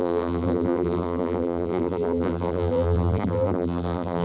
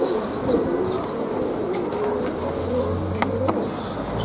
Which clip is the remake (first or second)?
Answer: first